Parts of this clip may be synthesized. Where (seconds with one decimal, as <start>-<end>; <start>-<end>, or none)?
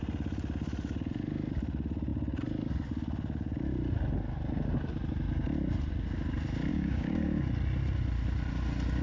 6.7-7.4